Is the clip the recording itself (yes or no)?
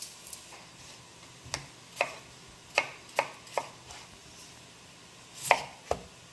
yes